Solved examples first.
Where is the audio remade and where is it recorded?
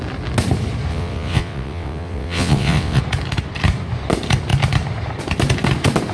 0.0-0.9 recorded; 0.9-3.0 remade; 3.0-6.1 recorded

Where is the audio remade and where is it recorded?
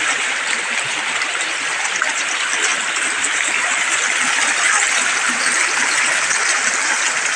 0.0-2.7 remade; 2.7-7.4 recorded